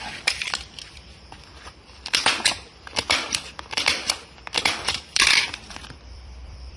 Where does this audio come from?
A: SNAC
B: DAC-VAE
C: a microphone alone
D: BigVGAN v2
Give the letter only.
D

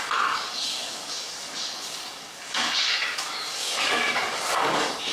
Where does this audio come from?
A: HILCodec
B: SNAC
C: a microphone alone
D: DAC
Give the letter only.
D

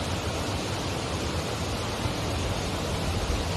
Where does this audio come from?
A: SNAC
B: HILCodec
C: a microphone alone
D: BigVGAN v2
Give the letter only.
C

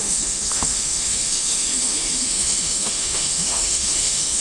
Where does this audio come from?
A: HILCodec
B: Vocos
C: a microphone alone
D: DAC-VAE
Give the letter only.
D